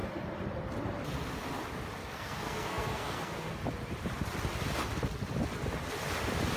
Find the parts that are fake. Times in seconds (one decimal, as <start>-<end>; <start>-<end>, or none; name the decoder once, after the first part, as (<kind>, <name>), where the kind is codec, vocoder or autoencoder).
2.0-3.6 (codec, SNAC)